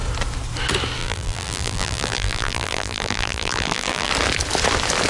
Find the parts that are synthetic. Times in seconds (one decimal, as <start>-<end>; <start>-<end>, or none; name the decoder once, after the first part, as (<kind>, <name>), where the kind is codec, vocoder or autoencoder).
1.0-4.1 (vocoder, BigVGAN v2)